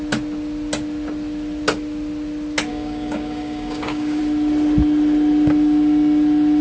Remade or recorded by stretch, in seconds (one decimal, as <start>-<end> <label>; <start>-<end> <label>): 0.0-2.7 recorded; 2.7-4.2 remade; 4.2-6.6 recorded